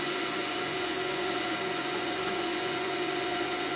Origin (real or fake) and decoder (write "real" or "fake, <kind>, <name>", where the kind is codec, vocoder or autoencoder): fake, vocoder, Vocos